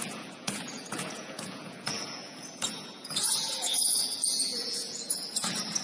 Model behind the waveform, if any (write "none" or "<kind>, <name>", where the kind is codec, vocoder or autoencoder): vocoder, Vocos